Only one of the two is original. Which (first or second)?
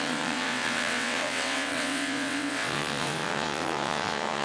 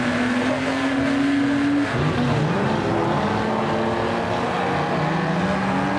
second